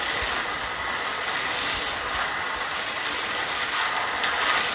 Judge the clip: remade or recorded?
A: recorded